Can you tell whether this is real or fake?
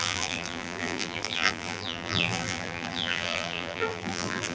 fake